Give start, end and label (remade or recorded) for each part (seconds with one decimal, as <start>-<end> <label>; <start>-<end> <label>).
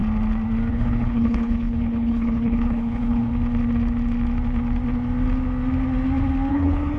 0.0-0.7 recorded; 0.7-3.3 remade; 3.3-6.5 recorded; 6.5-7.0 remade